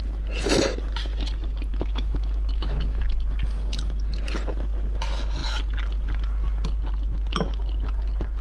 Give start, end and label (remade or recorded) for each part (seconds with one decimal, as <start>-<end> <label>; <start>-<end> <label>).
0.0-1.7 recorded; 1.7-3.0 remade; 3.0-8.4 recorded